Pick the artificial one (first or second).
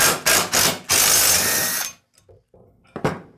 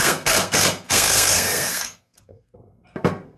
second